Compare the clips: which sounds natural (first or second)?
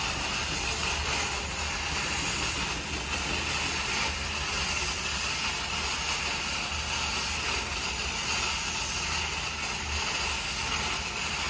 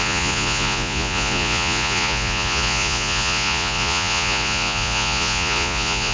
first